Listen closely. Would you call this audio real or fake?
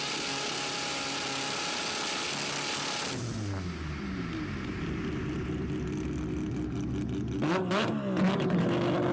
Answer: real